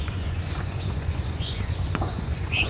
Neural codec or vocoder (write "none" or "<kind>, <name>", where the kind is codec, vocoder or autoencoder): vocoder, Vocos